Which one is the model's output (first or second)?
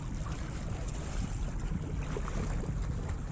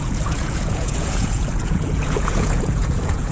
second